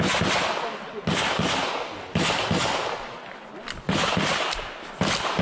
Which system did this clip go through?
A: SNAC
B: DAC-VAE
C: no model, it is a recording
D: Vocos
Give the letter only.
C